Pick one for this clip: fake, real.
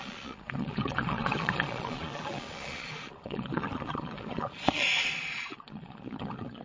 fake